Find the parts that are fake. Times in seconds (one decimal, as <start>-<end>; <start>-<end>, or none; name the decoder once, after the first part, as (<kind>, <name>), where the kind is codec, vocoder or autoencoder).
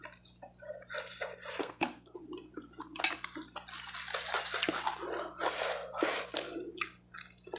1.6-2.2 (codec, SNAC)